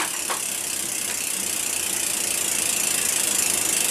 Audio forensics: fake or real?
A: real